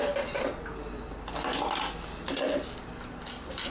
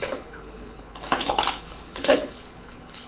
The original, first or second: first